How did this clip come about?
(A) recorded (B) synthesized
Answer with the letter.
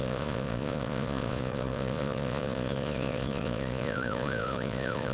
B